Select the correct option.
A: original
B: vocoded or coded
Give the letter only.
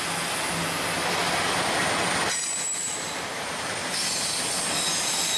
A